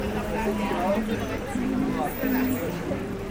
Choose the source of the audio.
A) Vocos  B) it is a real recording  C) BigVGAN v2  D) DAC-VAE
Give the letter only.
C